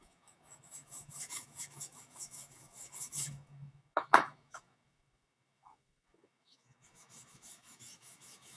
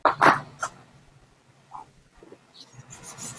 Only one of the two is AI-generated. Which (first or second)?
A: first